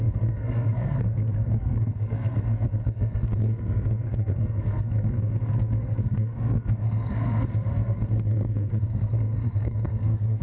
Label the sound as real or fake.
fake